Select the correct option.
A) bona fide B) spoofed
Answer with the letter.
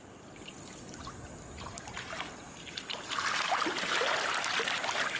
A